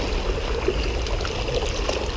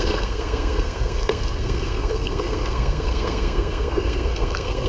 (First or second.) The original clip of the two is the first